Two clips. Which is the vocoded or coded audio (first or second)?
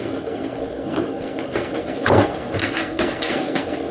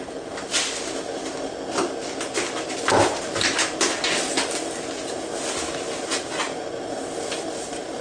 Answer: first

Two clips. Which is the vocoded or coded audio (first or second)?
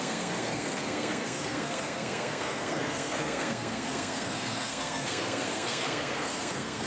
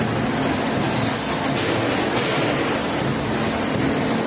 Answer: first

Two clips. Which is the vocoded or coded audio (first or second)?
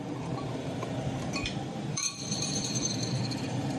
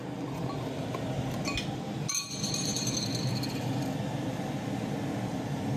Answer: first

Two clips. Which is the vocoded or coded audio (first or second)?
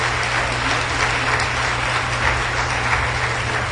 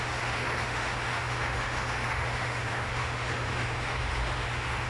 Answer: second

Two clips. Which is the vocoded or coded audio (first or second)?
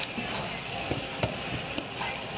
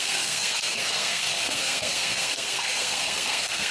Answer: second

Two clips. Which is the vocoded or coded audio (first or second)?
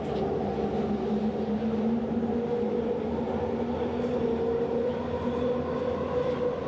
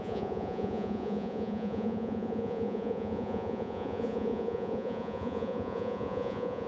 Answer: second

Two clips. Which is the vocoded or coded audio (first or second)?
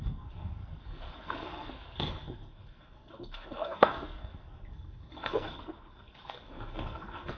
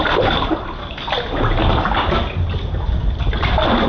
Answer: first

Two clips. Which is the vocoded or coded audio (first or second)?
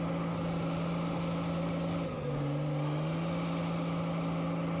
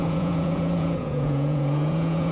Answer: second